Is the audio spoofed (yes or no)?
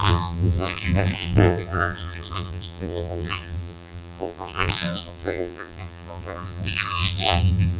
yes